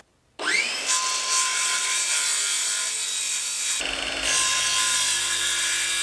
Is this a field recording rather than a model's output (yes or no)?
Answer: yes